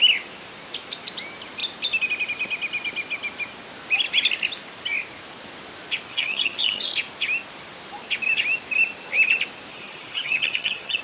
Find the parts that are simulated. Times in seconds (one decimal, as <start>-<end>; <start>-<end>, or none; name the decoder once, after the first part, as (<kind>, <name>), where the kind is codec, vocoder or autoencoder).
6.1-6.9 (vocoder, HiFi-GAN); 9.7-11.0